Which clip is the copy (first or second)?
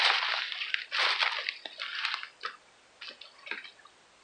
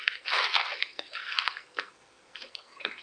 second